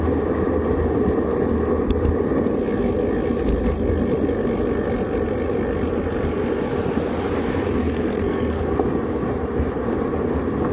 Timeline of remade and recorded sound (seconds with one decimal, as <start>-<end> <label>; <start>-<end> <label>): 0.0-7.8 recorded; 7.8-8.6 remade; 8.6-10.7 recorded